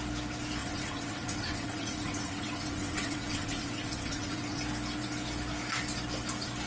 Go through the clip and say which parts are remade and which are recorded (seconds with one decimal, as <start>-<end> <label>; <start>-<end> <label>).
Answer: 0.0-0.6 recorded; 0.6-4.6 remade; 4.6-6.7 recorded